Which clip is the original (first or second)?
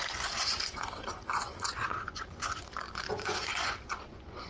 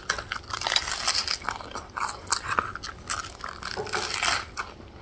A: second